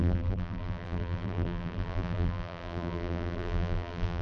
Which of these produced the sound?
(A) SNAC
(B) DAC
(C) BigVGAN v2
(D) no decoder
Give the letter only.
C